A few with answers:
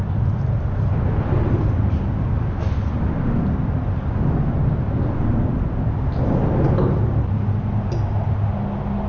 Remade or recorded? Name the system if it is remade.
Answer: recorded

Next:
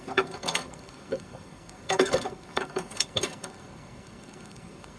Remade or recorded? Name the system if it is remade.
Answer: remade, codec, SNAC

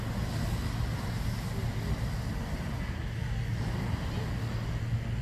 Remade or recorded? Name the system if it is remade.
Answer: recorded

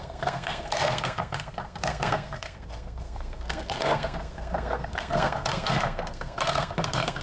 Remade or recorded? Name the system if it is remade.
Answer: remade, codec, SNAC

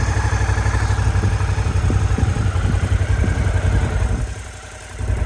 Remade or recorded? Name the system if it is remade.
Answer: remade, vocoder, BigVGAN v2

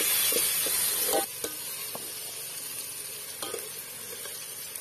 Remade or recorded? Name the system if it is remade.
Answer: recorded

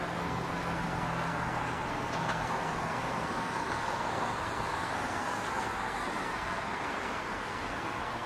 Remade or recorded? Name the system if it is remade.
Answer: remade, codec, SNAC